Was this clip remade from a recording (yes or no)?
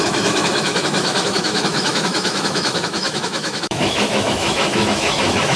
yes